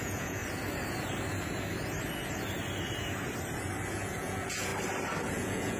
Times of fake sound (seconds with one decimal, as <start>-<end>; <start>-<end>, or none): 0.0-0.4; 3.9-4.7; 5.3-5.8